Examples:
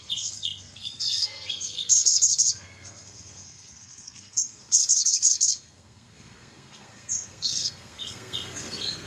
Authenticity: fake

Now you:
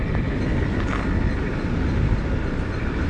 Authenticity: real